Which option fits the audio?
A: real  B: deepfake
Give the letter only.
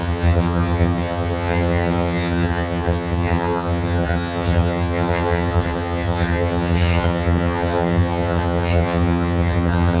B